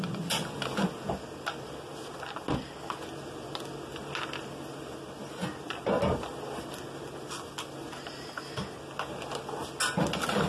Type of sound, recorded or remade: recorded